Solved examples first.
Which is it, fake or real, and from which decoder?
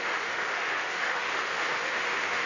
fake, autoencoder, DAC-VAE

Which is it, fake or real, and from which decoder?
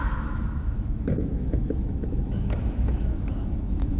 fake, autoencoder, DAC-VAE